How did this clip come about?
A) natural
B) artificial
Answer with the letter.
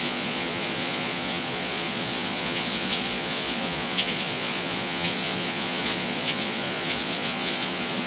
B